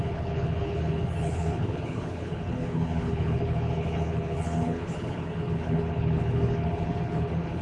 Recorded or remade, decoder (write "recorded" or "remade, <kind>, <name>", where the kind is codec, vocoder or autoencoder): remade, codec, HILCodec